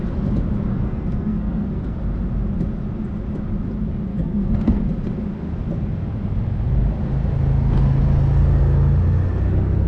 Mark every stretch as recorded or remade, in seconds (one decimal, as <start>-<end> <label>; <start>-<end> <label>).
0.0-0.7 recorded; 0.7-2.0 remade; 2.0-4.1 recorded; 4.1-4.8 remade; 4.8-9.9 recorded